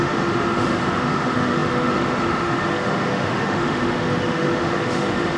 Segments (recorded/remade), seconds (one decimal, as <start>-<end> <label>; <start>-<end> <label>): 0.0-5.4 remade